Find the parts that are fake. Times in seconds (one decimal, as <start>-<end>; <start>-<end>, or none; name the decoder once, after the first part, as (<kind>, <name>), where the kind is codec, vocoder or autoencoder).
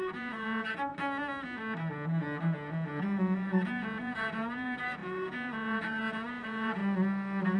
0.0-0.9 (vocoder, Vocos); 3.0-6.8